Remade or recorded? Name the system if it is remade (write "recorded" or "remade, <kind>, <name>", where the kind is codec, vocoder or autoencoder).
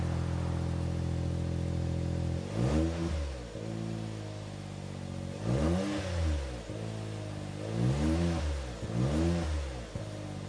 recorded